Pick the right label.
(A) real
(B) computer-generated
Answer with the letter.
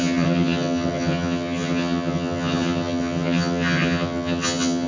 B